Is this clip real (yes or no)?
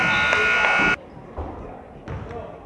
yes